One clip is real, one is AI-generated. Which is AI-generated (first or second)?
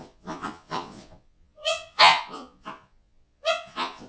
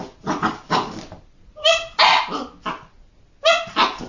first